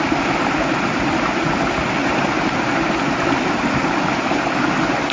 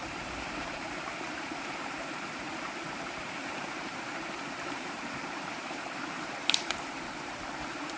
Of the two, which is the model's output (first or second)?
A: second